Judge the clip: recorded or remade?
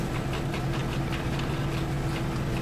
recorded